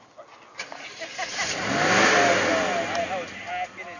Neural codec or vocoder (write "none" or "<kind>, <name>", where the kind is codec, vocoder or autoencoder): none